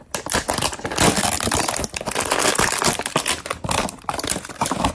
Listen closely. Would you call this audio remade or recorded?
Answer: recorded